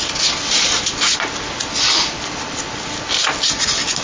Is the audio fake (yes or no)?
no